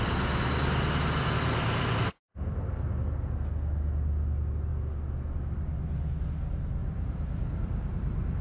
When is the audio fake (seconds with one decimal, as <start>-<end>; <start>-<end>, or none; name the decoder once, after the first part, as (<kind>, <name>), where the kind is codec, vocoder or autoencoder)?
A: 2.1-2.7 (vocoder, BigVGAN v2); 6.8-8.4